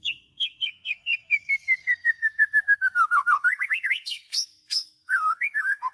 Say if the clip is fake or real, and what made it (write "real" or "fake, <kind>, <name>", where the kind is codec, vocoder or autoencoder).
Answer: fake, codec, SNAC